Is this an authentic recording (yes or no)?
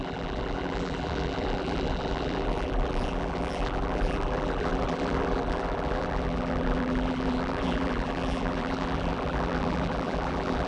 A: no